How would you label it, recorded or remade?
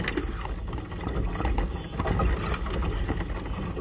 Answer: recorded